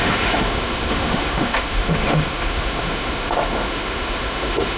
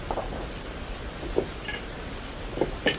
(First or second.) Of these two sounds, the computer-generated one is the first